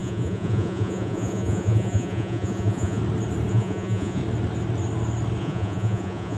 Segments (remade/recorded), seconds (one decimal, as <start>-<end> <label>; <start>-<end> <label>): 0.0-3.0 remade; 3.0-3.5 recorded; 3.5-4.2 remade; 4.2-5.4 recorded; 5.4-6.4 remade